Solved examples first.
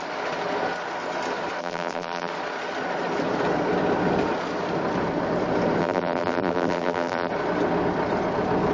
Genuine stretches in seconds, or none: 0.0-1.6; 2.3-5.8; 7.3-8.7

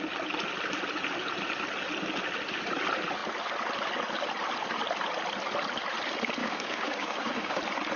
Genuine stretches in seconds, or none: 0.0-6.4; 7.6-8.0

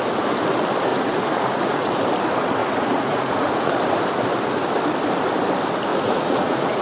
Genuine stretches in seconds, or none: 0.0-0.9; 2.0-2.6; 3.7-5.9